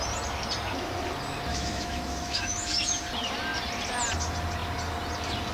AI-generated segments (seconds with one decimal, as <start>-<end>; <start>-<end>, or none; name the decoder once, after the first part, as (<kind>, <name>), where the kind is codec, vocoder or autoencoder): 1.5-3.0 (autoencoder, DAC-VAE)